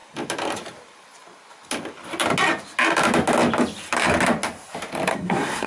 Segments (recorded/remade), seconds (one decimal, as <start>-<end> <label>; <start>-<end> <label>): 0.0-5.1 recorded; 5.1-5.7 remade